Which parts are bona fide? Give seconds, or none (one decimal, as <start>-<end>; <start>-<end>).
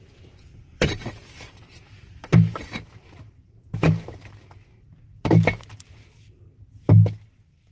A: 6.5-7.7